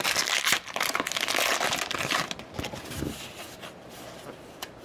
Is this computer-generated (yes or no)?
no